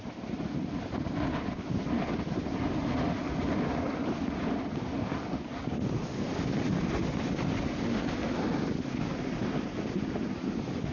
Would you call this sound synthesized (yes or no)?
no